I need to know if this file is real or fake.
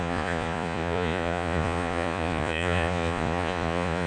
fake